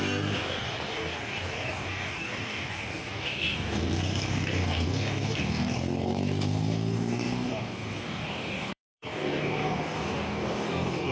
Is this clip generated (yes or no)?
yes